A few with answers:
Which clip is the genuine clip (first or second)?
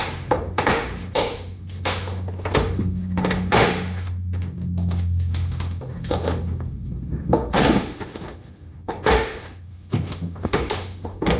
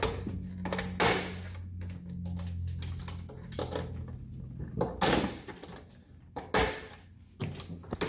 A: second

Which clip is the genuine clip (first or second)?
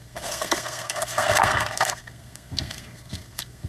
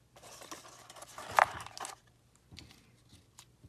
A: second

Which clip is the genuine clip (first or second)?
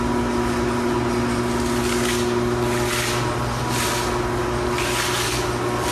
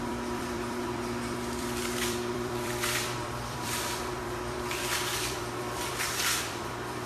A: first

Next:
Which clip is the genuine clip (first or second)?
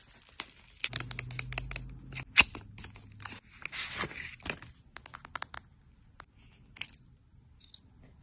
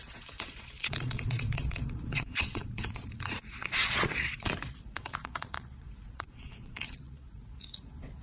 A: first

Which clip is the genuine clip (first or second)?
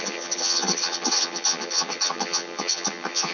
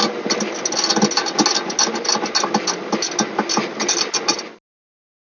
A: second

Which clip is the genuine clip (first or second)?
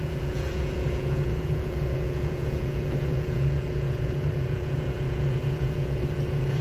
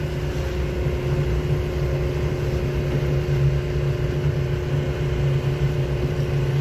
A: second